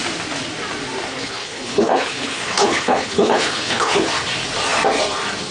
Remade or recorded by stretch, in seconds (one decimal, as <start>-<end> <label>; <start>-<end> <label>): 0.0-1.1 recorded; 1.1-4.1 remade; 4.1-5.5 recorded